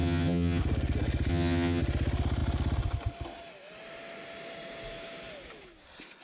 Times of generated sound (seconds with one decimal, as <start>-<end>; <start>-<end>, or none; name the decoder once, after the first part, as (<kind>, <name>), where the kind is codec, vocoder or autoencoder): 0.0-0.6 (vocoder, HiFi-GAN); 1.3-1.8